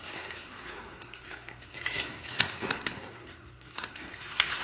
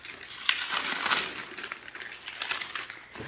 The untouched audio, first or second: second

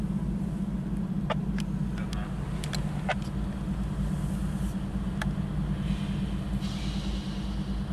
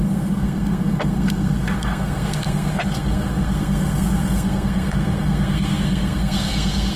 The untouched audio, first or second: first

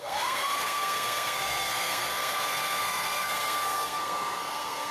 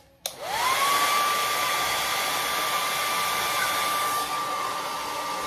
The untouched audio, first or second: second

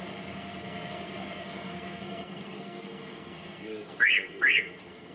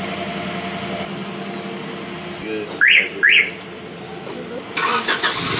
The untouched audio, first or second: second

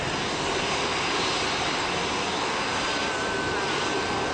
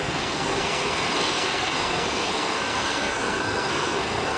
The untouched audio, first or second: first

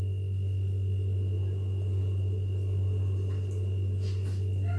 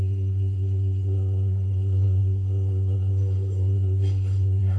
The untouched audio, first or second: first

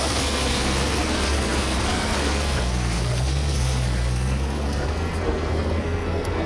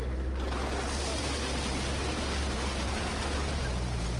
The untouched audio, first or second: second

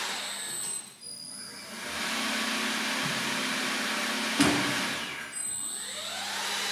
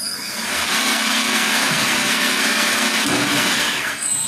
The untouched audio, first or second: first